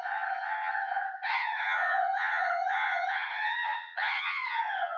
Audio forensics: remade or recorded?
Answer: remade